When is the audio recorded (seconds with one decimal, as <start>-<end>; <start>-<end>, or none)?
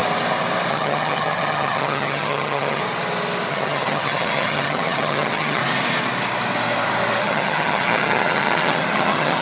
0.0-0.7; 2.8-3.5; 5.6-7.2